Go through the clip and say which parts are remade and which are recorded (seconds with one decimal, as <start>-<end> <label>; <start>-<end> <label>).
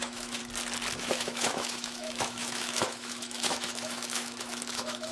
0.0-0.4 remade; 0.4-1.0 recorded; 1.0-5.1 remade